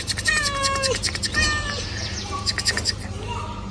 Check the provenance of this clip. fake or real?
real